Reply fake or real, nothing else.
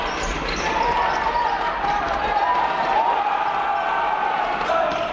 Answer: fake